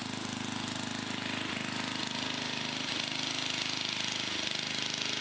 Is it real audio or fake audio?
real